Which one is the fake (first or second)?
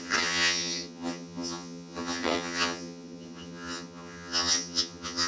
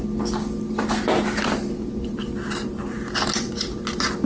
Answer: first